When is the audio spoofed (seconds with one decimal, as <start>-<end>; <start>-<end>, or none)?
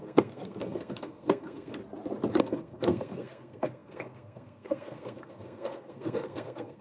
0.0-1.8; 2.4-6.8